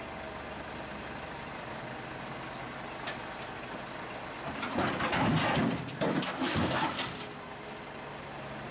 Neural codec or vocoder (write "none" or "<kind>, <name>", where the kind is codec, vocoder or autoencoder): none